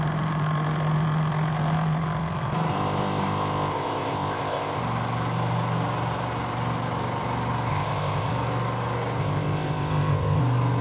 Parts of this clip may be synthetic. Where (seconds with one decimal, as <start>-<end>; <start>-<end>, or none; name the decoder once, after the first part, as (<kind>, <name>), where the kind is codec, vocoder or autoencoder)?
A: 2.7-4.8 (codec, ZipCodec); 7.7-8.3; 9.2-10.4